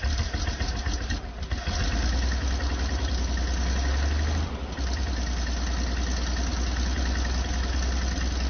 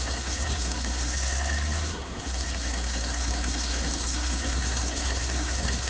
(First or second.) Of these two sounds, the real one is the first